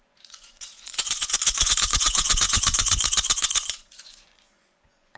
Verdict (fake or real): fake